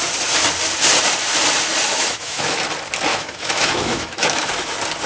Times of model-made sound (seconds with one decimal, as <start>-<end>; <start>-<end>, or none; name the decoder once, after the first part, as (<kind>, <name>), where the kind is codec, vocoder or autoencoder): 1.9-2.6 (autoencoder, DAC-VAE); 3.1-4.5